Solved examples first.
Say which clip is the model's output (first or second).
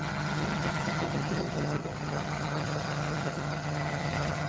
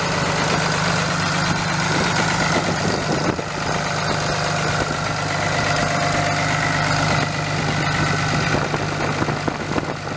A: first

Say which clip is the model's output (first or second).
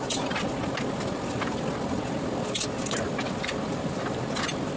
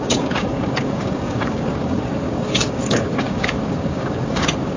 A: second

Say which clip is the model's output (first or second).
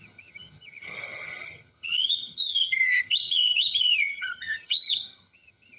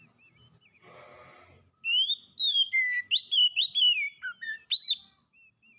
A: first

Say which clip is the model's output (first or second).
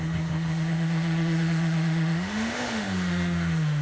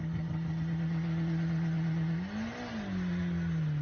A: first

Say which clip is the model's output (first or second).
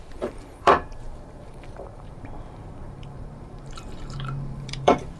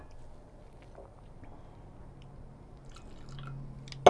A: first